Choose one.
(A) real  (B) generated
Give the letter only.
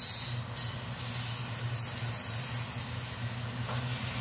A